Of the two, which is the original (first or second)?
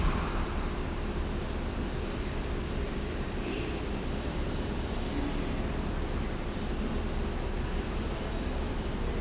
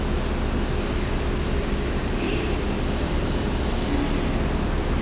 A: second